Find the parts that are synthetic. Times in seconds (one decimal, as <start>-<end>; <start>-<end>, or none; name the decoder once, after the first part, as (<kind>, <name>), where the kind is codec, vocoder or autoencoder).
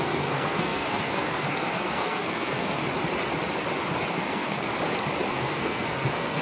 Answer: 0.0-2.8 (codec, SNAC); 4.1-4.7; 5.3-6.4